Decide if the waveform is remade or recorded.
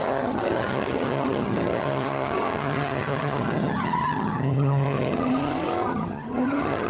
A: remade